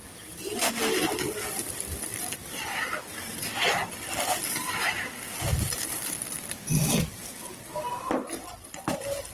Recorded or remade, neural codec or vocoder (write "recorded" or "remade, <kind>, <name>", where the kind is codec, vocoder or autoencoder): recorded